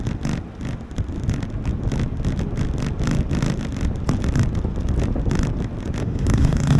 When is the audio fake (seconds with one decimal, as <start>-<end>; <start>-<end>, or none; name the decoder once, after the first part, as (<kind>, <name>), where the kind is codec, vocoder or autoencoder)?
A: 6.0-6.8 (autoencoder, DAC-VAE)